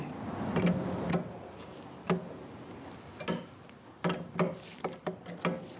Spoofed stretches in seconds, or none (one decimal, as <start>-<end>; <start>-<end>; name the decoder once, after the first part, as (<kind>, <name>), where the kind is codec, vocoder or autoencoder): none